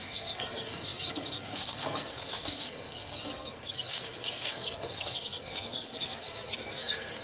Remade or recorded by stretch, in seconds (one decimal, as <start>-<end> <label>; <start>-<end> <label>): 0.0-7.2 remade